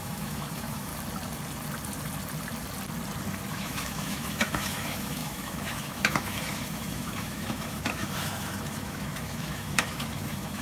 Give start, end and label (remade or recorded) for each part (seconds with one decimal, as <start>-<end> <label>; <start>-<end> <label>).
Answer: 0.0-0.9 remade; 0.9-3.5 recorded; 3.5-10.6 remade